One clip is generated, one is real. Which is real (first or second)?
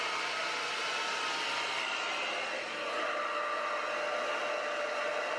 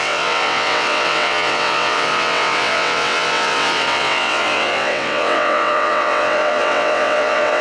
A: first